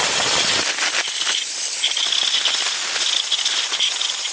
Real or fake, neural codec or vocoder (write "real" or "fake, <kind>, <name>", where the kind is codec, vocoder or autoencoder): real